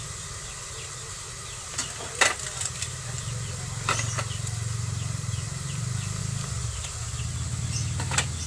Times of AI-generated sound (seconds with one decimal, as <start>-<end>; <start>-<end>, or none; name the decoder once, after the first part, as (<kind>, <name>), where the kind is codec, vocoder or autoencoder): none